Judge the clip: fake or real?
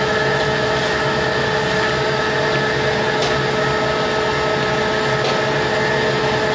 real